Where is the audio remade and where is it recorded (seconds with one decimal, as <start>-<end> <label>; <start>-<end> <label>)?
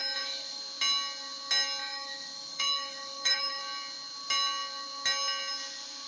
0.0-0.6 remade; 0.6-1.8 recorded; 1.8-3.6 remade; 3.6-6.1 recorded